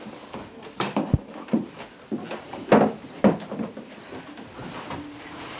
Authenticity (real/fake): real